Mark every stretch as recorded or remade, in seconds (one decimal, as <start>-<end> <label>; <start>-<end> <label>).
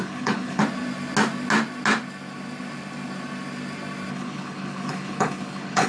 0.0-0.6 remade; 0.6-4.1 recorded; 4.1-5.9 remade